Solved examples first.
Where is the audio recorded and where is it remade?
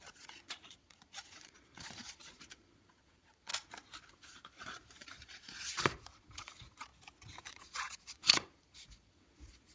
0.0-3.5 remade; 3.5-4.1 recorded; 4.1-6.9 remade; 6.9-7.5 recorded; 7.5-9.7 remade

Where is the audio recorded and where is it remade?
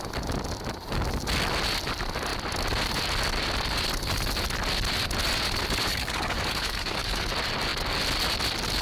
0.0-5.9 recorded; 5.9-7.3 remade; 7.3-8.8 recorded